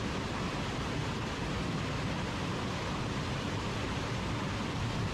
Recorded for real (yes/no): yes